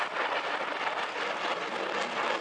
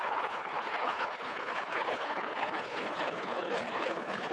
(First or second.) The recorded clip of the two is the first